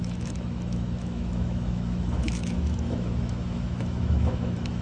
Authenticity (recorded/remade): remade